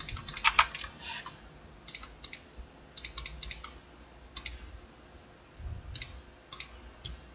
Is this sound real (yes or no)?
yes